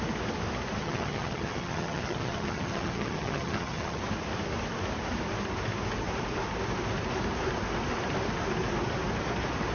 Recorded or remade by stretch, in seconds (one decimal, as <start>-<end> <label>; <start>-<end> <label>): 0.0-0.8 recorded; 0.8-4.0 remade; 4.0-9.7 recorded